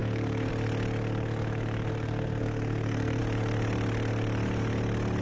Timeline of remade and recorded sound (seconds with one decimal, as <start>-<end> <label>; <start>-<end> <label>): 0.0-0.5 remade; 0.5-1.9 recorded; 1.9-3.2 remade; 3.2-5.2 recorded